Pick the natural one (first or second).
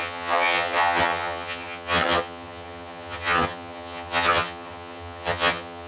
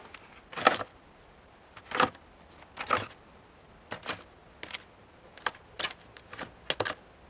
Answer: second